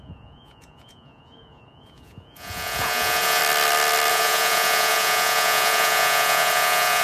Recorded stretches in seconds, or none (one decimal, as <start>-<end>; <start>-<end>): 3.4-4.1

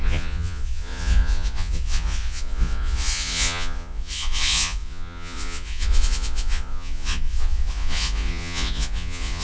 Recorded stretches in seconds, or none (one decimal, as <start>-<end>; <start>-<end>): none

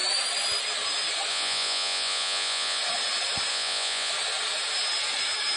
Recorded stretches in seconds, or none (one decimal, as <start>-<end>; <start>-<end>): 0.0-1.3; 2.8-3.5; 4.1-5.6

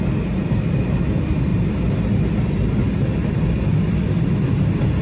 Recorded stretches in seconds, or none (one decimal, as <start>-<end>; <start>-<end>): 0.0-5.0

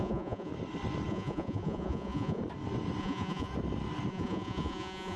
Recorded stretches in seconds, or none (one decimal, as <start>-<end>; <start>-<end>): 0.5-1.1; 2.4-3.0; 3.5-4.1